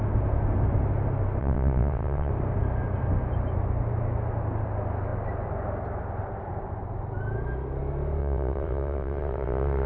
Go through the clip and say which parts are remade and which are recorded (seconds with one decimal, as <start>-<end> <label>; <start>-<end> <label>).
0.0-1.4 recorded; 1.4-2.3 remade; 2.3-8.2 recorded; 8.2-9.9 remade